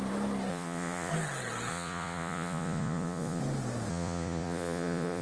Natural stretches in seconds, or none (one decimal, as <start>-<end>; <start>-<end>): 0.0-0.5; 1.1-1.7; 3.4-3.9